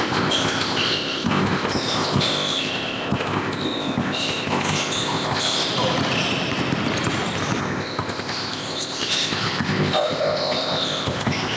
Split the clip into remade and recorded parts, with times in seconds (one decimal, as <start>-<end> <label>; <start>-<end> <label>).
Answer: 0.0-5.7 remade; 5.7-7.6 recorded; 7.6-11.6 remade